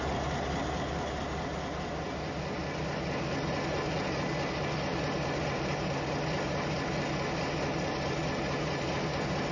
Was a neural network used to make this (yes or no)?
no